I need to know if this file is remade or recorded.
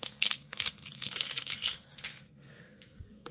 remade